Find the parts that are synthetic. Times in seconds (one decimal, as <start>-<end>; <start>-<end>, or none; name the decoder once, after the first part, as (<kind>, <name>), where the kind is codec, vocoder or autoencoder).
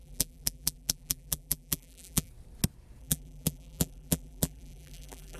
0.0-2.3 (vocoder, BigVGAN v2); 3.0-5.4